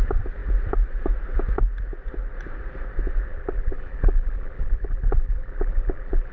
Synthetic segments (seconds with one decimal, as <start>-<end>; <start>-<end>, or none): 3.3-6.3